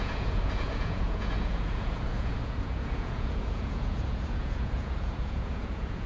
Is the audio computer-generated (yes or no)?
yes